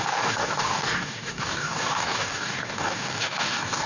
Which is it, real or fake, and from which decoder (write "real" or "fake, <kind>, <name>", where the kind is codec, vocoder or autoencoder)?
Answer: fake, codec, DAC